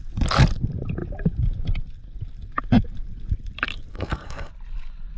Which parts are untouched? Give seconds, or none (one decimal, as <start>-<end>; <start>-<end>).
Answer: 0.0-3.9; 4.5-5.2